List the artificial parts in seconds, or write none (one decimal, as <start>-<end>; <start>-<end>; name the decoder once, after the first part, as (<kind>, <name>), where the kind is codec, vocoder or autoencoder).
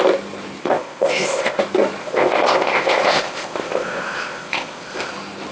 0.6-1.6 (codec, ZipCodec); 2.0-5.1